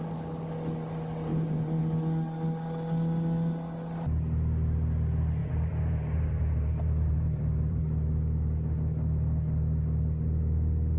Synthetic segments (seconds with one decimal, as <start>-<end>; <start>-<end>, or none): 1.3-1.8; 5.4-7.8